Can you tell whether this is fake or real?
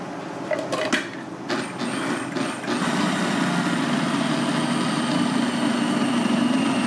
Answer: real